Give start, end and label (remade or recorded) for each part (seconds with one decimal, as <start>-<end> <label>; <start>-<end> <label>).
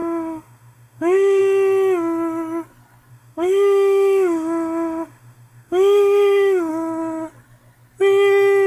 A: 0.0-1.4 remade; 1.4-3.1 recorded; 3.1-6.7 remade; 6.7-8.7 recorded